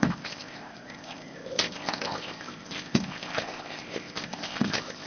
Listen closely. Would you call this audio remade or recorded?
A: remade